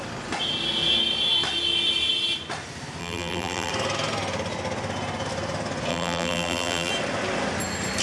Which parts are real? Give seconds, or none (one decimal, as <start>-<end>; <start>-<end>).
0.0-3.0; 3.7-5.9; 6.9-8.0